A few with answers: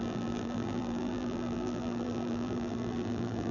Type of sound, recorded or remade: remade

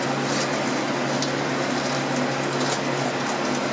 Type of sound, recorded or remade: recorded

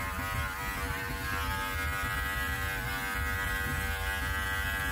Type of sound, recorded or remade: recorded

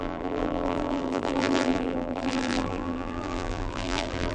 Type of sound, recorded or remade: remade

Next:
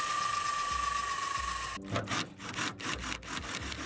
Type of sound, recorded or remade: recorded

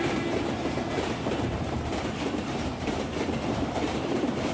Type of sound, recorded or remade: remade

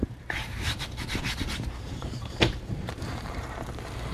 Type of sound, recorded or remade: remade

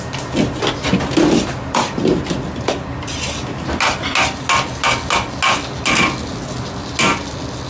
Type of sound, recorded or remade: recorded